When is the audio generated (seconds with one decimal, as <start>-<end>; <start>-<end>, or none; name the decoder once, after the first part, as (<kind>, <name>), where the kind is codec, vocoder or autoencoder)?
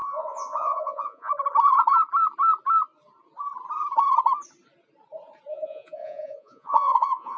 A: 0.0-1.3 (vocoder, Vocos); 5.5-7.4